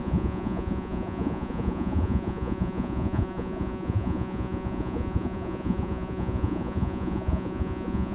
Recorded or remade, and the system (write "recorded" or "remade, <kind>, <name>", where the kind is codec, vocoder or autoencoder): remade, vocoder, Vocos